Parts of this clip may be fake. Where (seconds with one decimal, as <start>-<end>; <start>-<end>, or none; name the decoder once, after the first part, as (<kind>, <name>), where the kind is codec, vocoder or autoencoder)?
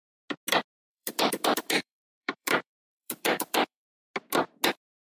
0.9-4.0 (vocoder, BigVGAN v2)